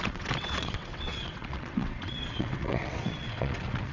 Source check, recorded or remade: remade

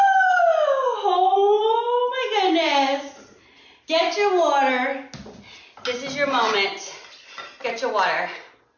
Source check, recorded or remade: recorded